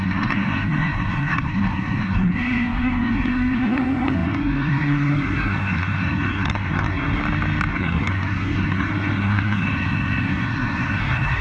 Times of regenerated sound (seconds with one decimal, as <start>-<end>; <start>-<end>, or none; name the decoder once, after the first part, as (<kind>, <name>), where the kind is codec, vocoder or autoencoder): 0.0-7.2 (codec, SNAC); 7.7-11.4